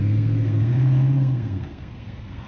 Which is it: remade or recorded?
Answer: remade